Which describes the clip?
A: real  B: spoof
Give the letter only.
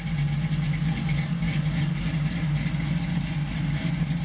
A